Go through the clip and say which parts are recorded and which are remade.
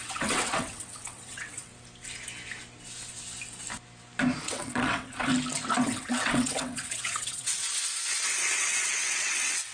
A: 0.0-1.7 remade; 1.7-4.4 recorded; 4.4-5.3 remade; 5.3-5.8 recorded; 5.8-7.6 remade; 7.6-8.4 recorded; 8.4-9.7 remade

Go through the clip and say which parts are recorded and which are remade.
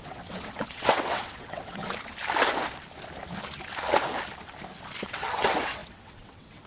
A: 0.0-1.8 remade; 1.8-5.0 recorded; 5.0-6.7 remade